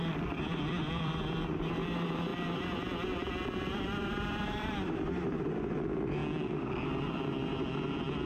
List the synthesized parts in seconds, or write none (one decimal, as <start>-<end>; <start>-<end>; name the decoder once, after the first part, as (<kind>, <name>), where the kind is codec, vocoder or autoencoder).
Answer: 0.0-6.2 (vocoder, BigVGAN v2); 6.7-8.3